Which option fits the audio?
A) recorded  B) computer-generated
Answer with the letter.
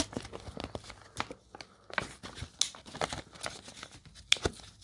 A